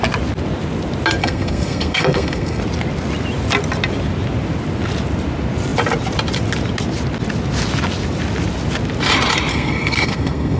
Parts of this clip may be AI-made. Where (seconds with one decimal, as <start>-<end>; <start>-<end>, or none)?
1.2-2.6; 9.5-10.6